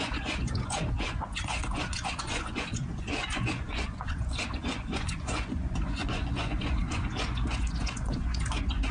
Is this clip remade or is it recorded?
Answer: remade